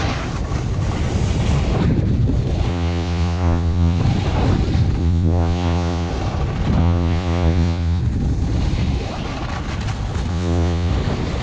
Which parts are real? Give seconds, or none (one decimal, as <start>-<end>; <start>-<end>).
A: 0.0-2.7; 4.0-5.0; 6.1-6.8; 8.0-10.3; 10.9-11.4